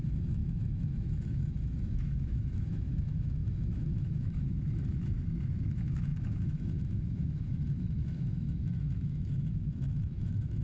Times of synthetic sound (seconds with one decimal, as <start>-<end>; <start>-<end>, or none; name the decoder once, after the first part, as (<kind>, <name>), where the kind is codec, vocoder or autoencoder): 0.0-10.6 (autoencoder, DAC-VAE)